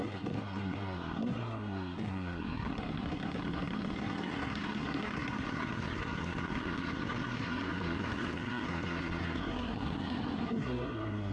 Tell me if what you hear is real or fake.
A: fake